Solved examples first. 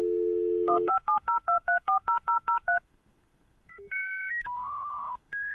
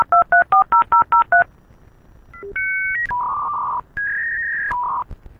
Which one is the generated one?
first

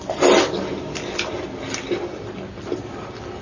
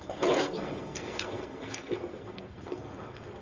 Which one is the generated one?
second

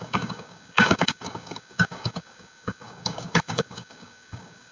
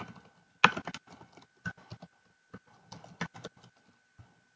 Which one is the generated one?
first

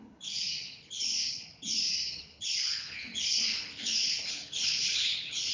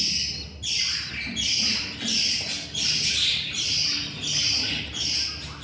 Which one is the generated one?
first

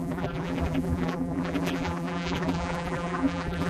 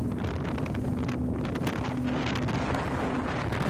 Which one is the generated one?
first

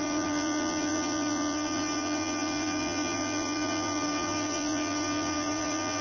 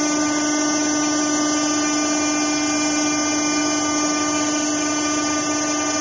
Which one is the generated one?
first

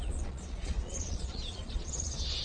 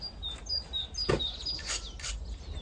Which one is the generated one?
first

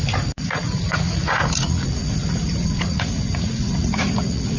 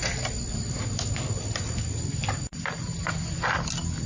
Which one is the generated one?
first